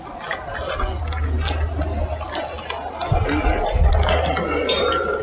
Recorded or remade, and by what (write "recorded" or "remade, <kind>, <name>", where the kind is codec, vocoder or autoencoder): recorded